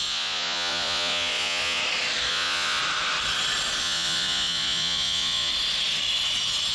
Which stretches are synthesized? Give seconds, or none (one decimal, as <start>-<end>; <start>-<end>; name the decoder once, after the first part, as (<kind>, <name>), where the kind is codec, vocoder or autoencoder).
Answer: 0.0-1.8 (vocoder, Vocos); 2.3-2.8; 3.8-5.5